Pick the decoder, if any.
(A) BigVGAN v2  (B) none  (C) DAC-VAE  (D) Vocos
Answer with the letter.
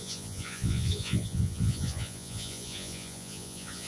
D